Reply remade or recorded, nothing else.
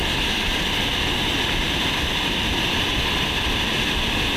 recorded